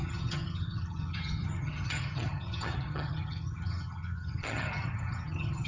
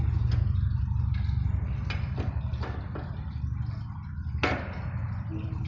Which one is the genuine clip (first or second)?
second